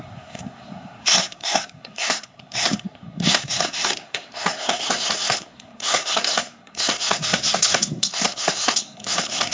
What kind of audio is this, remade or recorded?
remade